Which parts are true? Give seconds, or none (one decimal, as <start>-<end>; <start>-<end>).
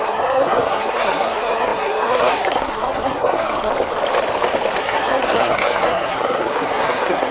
3.7-4.8